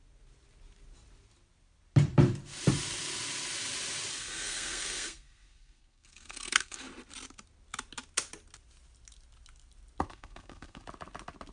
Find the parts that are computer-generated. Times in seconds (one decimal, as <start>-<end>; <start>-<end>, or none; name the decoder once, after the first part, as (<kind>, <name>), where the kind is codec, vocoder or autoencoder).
4.1-6.8 (codec, SNAC); 10.1-10.8